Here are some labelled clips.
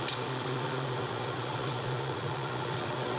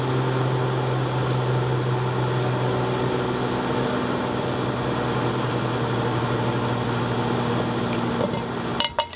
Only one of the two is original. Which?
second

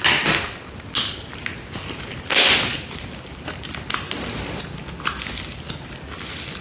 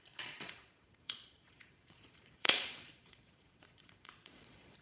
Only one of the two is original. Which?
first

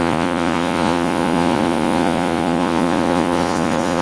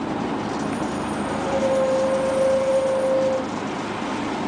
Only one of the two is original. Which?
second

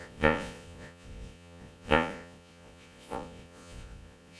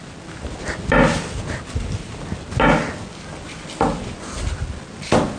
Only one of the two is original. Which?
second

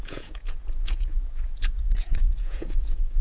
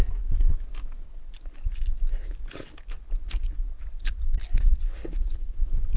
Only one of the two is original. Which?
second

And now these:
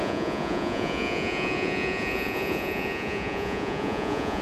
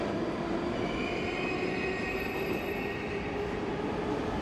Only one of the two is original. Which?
second